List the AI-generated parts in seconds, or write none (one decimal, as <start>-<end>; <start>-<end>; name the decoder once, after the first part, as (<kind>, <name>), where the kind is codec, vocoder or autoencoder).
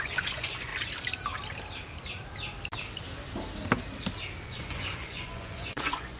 0.0-0.7 (vocoder, Vocos); 4.4-6.2